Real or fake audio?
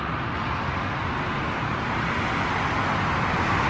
real